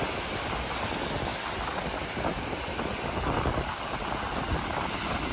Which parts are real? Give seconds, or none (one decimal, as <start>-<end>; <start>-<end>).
0.0-5.3